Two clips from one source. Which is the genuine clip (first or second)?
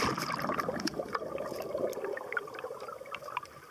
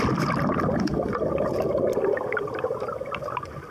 second